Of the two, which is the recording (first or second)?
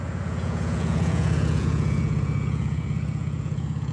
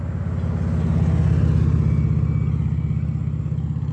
second